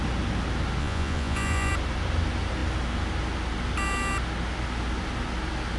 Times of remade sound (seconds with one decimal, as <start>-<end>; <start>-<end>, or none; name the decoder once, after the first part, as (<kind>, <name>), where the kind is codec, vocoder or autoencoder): 0.8-1.7 (vocoder, Vocos)